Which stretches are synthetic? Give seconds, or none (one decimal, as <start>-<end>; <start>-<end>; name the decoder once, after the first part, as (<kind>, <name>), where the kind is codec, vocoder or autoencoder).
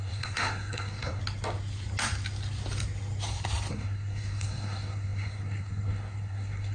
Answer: 0.0-1.2 (codec, SNAC); 3.7-6.7